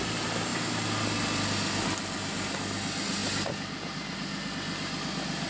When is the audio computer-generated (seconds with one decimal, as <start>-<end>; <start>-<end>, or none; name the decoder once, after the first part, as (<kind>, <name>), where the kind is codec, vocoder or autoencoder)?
none